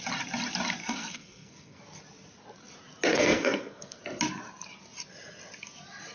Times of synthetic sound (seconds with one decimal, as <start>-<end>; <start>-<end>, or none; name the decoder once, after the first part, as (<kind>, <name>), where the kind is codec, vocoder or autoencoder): 0.8-1.8 (codec, SNAC); 3.1-4.0